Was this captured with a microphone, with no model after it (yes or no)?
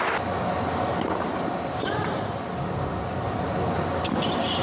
yes